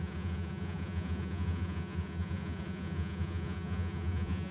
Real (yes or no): no